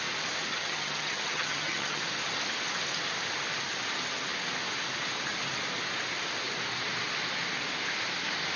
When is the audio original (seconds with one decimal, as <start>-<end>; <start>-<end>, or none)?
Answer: 0.0-0.5; 2.0-8.6